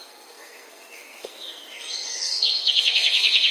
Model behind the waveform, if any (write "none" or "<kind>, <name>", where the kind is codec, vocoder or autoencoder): codec, SNAC